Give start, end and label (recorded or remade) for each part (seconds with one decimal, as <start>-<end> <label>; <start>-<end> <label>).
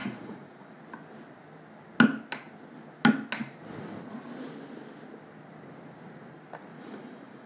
0.0-0.8 remade; 0.8-6.7 recorded; 6.7-7.5 remade